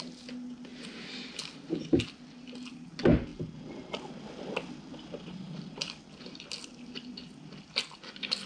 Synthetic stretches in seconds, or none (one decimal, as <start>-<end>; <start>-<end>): none